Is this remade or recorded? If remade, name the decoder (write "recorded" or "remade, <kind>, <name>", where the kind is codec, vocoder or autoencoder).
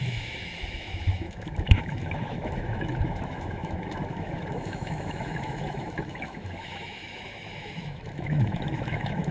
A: remade, autoencoder, DAC-VAE